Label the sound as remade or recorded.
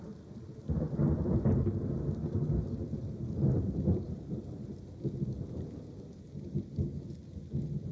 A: recorded